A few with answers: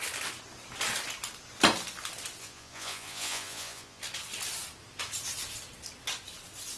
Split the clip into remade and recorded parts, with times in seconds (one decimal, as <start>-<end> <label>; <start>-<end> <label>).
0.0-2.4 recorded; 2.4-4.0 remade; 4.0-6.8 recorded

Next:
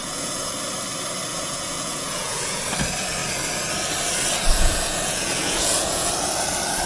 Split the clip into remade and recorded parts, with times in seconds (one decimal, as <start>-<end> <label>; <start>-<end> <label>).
0.0-0.5 remade; 0.5-1.3 recorded; 1.3-2.6 remade; 2.6-4.5 recorded; 4.5-6.1 remade; 6.1-6.9 recorded

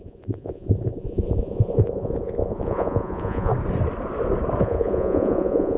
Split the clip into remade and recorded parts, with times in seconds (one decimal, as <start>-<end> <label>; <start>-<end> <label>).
0.0-3.5 remade; 3.5-4.6 recorded; 4.6-5.8 remade

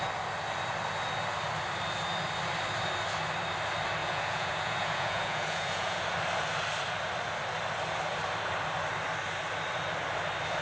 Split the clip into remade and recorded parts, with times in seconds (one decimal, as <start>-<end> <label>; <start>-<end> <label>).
0.0-4.0 recorded; 4.0-6.0 remade; 6.0-10.6 recorded